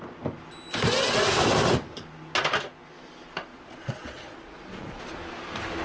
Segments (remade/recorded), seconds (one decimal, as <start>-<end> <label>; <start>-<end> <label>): 0.0-3.5 recorded; 3.5-5.0 remade; 5.0-5.8 recorded